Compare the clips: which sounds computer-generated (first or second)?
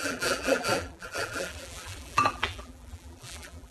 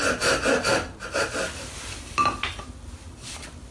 first